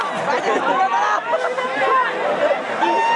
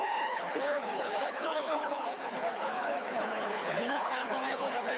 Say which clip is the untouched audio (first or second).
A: first